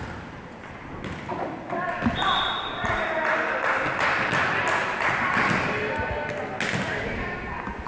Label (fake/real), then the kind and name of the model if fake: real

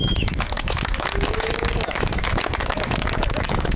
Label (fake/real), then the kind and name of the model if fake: fake, autoencoder, DAC-VAE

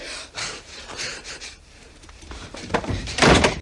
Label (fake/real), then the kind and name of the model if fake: fake, vocoder, BigVGAN v2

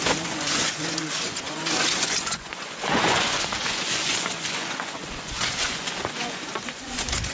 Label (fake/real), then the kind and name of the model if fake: fake, vocoder, Vocos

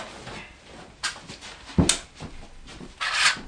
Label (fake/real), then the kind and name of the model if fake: real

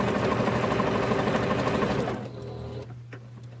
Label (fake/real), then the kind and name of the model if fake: real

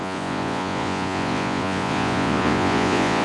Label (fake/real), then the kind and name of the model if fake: fake, vocoder, Vocos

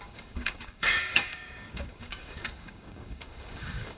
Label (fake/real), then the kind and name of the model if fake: fake, codec, DAC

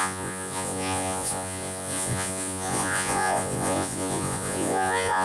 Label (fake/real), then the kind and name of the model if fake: fake, vocoder, Vocos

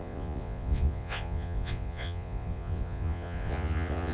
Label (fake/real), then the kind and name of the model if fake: fake, vocoder, Vocos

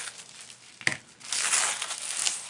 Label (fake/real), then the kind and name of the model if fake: real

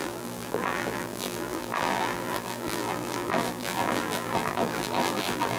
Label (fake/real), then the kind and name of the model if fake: fake, vocoder, BigVGAN v2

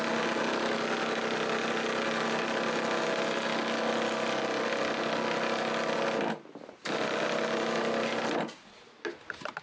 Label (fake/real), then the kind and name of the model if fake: real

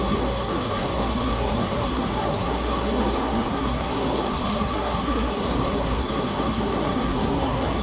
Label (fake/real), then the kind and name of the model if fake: fake, codec, SNAC